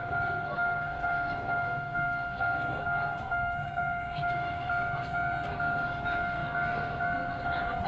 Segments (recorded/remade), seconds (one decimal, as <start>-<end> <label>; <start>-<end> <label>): 0.0-7.9 remade

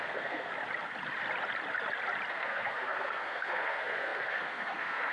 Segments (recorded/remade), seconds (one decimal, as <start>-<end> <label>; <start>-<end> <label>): 0.0-0.5 remade; 0.5-2.3 recorded; 2.3-5.1 remade

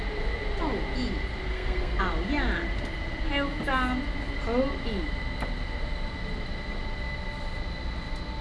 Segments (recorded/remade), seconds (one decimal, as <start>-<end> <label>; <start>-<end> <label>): 0.0-1.5 recorded; 1.5-2.0 remade; 2.0-8.4 recorded

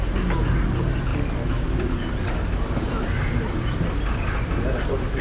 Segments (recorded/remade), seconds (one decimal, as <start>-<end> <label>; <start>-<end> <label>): 0.0-5.2 recorded